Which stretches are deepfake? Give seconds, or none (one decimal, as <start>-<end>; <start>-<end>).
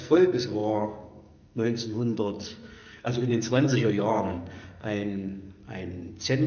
0.0-5.6